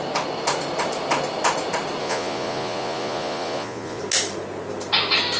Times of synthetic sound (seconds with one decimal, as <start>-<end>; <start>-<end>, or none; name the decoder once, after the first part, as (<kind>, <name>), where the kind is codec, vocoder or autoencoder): 2.0-4.0 (vocoder, Vocos)